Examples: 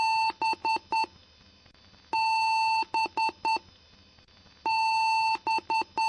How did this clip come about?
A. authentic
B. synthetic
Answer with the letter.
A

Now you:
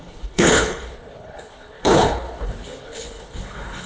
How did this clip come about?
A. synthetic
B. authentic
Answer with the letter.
A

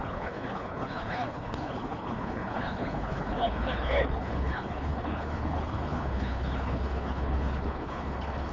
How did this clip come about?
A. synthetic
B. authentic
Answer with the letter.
A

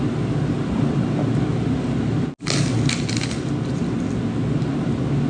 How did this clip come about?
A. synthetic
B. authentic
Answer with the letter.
B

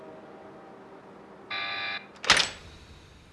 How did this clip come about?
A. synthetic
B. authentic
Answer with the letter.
B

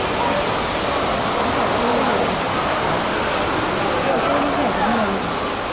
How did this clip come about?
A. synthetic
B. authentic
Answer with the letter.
B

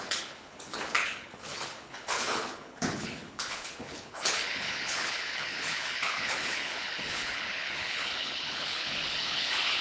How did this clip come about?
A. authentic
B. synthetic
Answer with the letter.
B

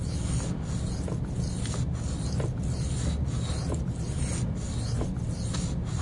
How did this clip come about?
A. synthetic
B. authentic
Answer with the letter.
B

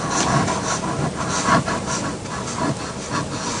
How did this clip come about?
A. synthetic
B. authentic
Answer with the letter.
B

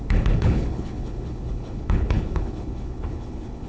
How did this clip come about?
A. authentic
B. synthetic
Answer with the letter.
B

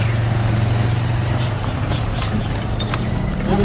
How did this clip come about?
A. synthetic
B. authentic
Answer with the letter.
B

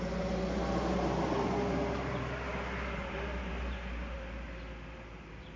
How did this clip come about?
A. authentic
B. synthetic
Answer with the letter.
A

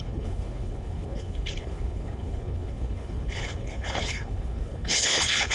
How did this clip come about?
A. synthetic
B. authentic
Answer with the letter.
A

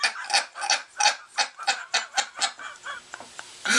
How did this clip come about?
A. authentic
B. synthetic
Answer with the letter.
A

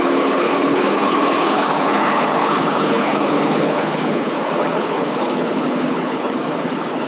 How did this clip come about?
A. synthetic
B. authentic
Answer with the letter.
A